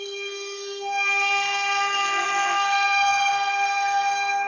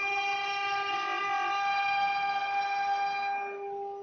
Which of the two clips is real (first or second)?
second